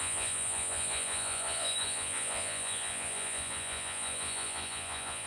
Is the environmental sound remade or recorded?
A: remade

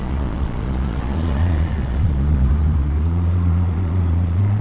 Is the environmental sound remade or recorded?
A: remade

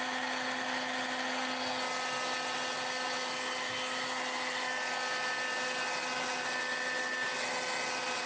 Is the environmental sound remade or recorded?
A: recorded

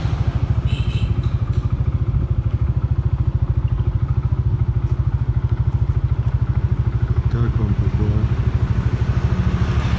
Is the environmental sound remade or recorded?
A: recorded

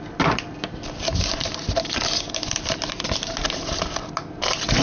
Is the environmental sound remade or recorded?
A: recorded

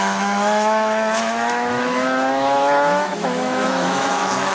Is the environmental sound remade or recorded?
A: remade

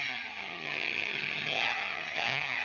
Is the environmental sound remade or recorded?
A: remade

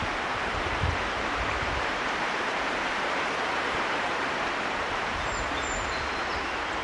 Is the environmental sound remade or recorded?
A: remade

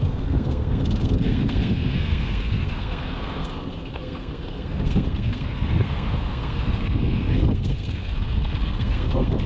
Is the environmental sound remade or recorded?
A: remade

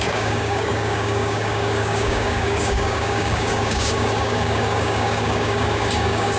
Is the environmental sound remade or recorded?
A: remade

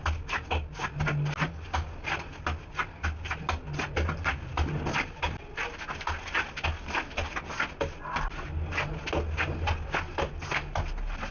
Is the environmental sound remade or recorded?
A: recorded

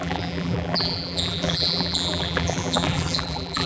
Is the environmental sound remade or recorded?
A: remade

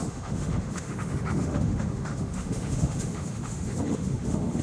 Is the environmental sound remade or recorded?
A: remade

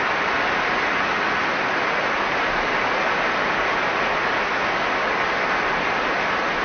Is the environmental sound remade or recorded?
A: recorded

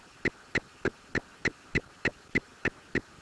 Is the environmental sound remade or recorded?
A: recorded